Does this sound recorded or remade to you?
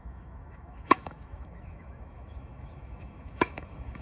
remade